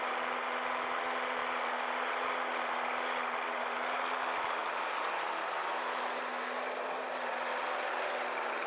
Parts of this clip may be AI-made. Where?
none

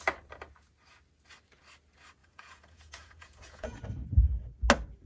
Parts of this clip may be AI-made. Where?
2.2-3.8 (vocoder, Vocos)